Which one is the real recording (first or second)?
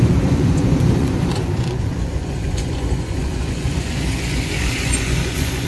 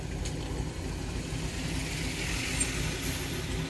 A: second